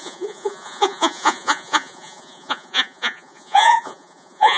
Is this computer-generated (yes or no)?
yes